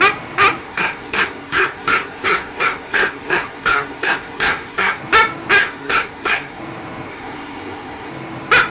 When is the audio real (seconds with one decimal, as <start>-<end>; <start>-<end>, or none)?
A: 0.0-0.6; 5.0-5.6; 6.6-7.1; 8.1-8.7